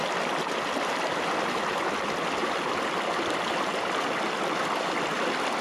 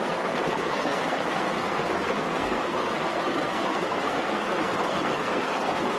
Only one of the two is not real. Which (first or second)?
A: second